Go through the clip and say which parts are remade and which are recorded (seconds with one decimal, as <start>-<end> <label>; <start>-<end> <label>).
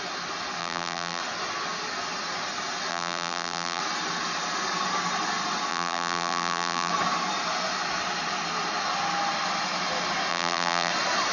0.0-0.6 recorded; 0.6-1.2 remade; 1.2-2.9 recorded; 2.9-3.8 remade; 3.8-5.7 recorded; 5.7-6.9 remade; 6.9-10.3 recorded; 10.3-10.9 remade; 10.9-11.3 recorded